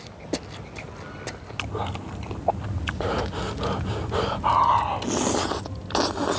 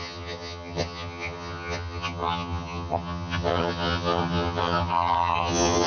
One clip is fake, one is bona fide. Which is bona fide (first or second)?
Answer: first